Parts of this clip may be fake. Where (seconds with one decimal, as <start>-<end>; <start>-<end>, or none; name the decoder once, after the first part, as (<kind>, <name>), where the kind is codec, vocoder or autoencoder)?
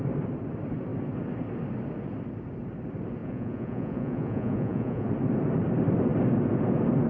3.2-5.1 (vocoder, Vocos)